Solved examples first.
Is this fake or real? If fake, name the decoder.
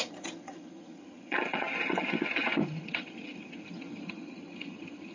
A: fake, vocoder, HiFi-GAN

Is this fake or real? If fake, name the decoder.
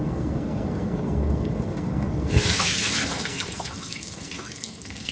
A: fake, codec, SNAC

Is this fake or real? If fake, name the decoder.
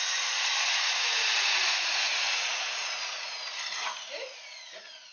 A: fake, vocoder, Vocos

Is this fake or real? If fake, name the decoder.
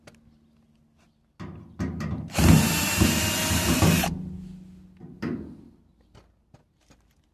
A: real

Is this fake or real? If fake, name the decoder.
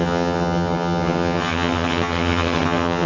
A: fake, vocoder, HiFi-GAN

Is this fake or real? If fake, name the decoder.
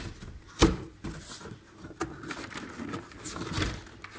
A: real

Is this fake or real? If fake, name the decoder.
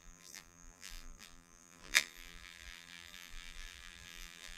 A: fake, vocoder, BigVGAN v2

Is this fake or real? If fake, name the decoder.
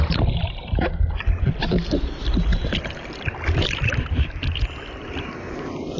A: real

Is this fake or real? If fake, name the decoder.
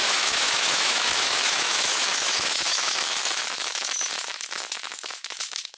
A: fake, autoencoder, DAC-VAE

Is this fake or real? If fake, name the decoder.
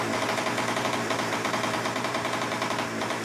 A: fake, vocoder, BigVGAN v2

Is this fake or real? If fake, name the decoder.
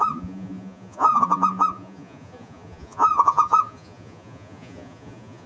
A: fake, vocoder, Vocos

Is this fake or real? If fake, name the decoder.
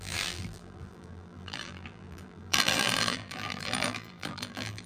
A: fake, vocoder, BigVGAN v2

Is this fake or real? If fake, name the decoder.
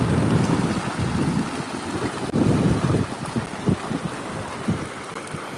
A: real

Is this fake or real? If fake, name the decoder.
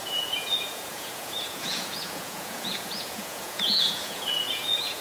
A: fake, vocoder, Vocos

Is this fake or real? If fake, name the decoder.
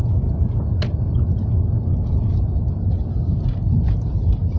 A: real